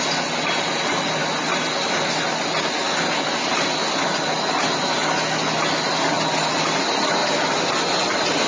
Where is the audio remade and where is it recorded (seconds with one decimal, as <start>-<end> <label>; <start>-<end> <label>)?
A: 0.0-8.5 recorded